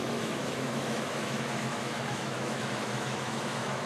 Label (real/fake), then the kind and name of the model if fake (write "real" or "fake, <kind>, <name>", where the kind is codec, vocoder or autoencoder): fake, autoencoder, DAC-VAE